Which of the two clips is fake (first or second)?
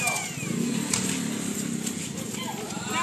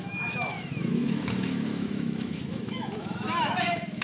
second